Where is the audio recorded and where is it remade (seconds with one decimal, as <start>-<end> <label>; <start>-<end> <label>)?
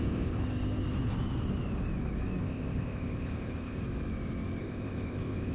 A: 0.0-0.4 remade; 0.4-2.4 recorded; 2.4-3.8 remade; 3.8-4.6 recorded; 4.6-5.5 remade